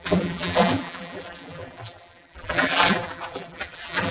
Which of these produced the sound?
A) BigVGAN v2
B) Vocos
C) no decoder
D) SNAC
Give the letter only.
A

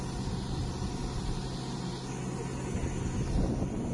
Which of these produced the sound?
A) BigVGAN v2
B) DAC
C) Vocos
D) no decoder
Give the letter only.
D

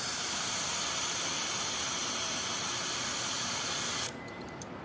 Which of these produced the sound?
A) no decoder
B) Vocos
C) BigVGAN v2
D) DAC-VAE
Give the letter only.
C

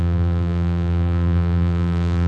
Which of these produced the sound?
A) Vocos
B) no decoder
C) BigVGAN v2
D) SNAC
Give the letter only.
C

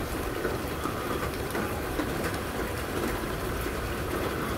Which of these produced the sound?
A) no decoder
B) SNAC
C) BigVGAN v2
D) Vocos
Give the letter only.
C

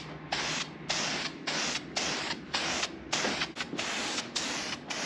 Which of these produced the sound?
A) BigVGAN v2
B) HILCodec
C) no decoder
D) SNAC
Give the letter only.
C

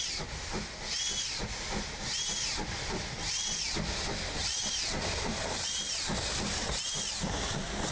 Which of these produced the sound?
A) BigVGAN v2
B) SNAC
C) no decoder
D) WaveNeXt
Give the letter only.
C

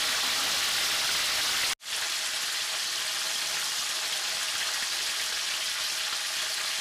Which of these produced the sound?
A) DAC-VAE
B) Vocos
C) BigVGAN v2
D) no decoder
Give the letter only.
D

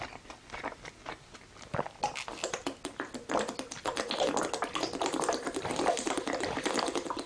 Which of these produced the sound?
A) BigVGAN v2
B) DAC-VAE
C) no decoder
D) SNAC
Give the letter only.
C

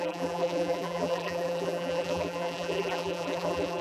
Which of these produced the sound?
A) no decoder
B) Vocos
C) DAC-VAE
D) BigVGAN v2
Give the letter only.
D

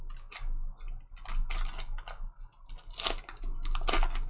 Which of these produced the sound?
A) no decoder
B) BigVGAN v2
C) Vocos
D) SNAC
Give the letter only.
A